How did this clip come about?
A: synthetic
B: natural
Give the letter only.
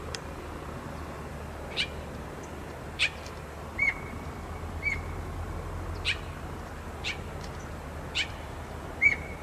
B